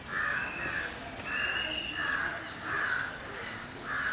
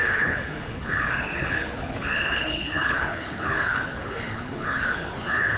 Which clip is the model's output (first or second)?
second